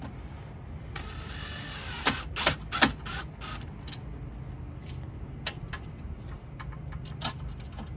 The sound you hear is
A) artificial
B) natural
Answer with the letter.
B